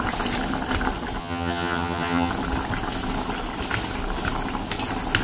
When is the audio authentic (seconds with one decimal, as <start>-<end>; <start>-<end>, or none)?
0.0-1.2; 2.3-5.2